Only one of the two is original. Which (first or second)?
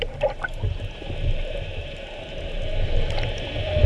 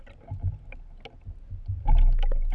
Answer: second